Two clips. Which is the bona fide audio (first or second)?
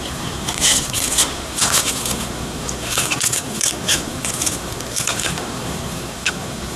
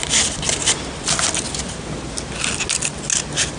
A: second